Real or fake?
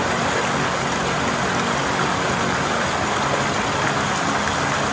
real